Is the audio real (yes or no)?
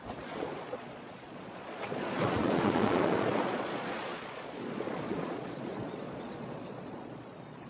no